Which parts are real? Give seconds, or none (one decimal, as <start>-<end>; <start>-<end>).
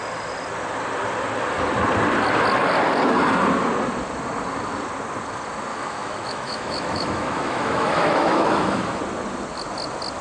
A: 0.0-5.7; 9.0-10.2